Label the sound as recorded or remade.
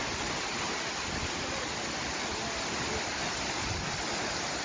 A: recorded